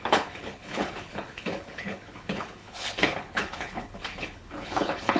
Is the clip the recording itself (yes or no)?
no